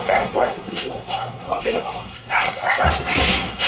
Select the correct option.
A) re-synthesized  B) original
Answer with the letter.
A